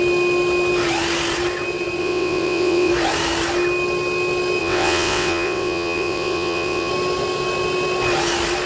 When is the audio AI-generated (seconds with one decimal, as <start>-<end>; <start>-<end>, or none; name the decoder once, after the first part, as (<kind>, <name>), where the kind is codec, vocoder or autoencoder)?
2.0-2.9 (vocoder, WaveNeXt); 4.6-6.9